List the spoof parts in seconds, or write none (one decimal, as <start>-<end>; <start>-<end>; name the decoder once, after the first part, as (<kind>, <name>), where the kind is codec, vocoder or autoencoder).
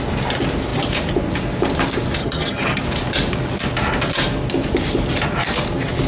2.2-2.8 (vocoder, HiFi-GAN)